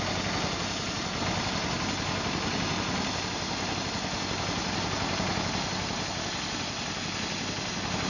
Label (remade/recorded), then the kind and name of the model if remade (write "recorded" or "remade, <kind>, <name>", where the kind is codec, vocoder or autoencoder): recorded